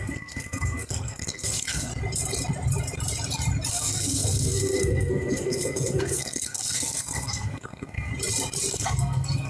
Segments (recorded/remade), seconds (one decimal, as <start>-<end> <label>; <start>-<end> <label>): 0.0-1.9 remade; 1.9-3.7 recorded; 3.7-8.1 remade; 8.1-8.7 recorded; 8.7-9.5 remade